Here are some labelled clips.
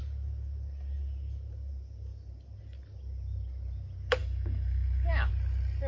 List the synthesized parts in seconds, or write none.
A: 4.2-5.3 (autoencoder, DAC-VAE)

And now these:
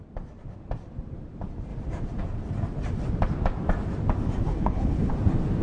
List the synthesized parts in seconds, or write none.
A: 4.5-5.1 (codec, HILCodec)

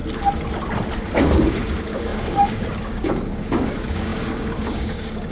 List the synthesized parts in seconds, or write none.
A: 1.0-5.3 (codec, DAC)

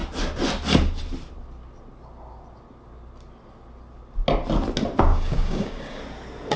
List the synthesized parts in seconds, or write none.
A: 5.1-6.0 (codec, DAC)